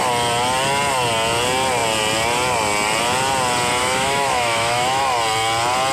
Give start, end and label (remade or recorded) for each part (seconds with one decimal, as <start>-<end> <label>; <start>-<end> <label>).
0.0-3.8 recorded; 3.8-5.0 remade; 5.0-5.9 recorded